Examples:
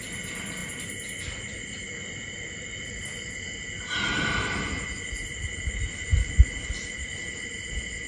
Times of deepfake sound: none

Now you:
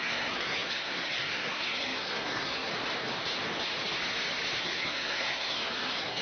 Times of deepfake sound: 0.0-2.7 (codec, SNAC); 4.6-6.2

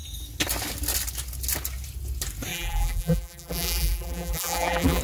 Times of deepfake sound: 2.5-5.0 (vocoder, BigVGAN v2)

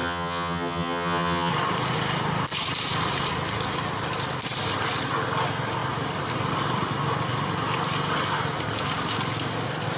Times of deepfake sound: 0.0-1.5 (vocoder, HiFi-GAN)

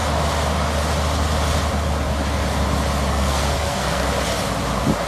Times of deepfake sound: 3.1-4.0 (codec, SNAC)

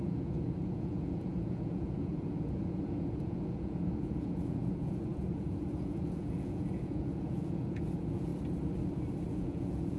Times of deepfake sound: 0.0-8.3 (vocoder, Vocos); 9.3-10.0